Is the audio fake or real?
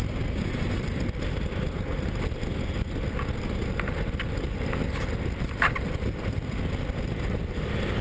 real